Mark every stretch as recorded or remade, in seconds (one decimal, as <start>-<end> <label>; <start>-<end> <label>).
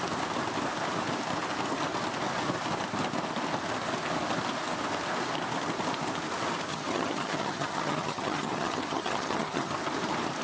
0.0-6.7 recorded; 6.7-9.7 remade; 9.7-10.4 recorded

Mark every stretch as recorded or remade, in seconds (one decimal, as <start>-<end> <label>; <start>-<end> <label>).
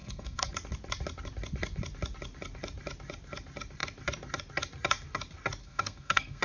0.0-0.5 remade; 0.5-5.6 recorded; 5.6-6.4 remade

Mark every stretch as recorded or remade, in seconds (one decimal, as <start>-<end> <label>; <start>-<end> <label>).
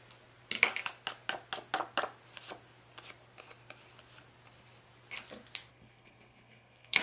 0.0-5.7 recorded; 5.7-7.0 remade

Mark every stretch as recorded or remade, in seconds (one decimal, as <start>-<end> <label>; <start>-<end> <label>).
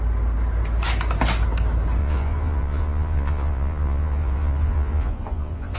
0.0-2.0 recorded; 2.0-5.8 remade